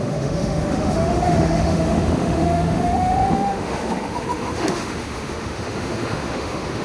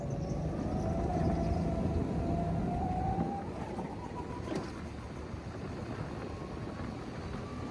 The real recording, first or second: second